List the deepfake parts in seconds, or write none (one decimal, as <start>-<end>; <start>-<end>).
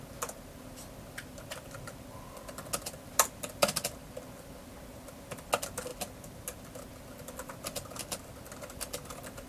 none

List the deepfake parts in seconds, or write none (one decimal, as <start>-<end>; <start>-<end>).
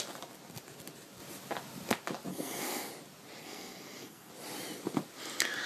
2.3-2.9; 3.4-4.3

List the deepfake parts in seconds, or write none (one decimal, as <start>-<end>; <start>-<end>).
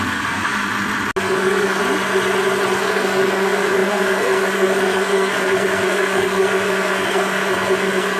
0.0-0.5; 1.2-1.8; 2.8-8.2